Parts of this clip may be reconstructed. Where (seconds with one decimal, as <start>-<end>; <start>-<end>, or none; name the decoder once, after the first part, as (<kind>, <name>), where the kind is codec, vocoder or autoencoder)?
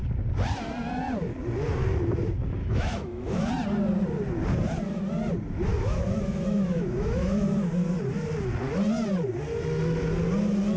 2.6-3.5 (autoencoder, DAC-VAE); 5.7-7.7